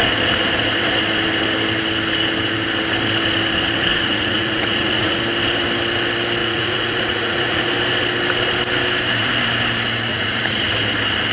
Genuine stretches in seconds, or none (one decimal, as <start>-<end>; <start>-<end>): 0.0-3.9; 5.2-6.4; 7.7-10.1; 10.6-11.3